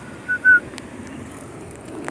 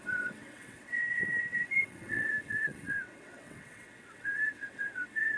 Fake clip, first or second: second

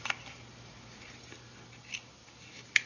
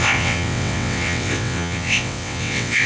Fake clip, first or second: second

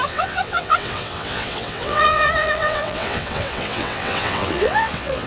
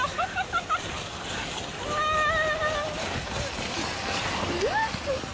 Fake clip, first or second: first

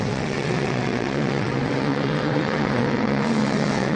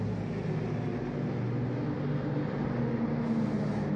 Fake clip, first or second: first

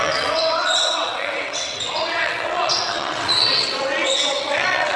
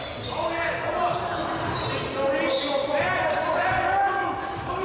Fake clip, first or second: first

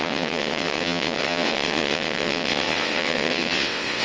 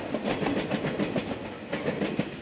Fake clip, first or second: first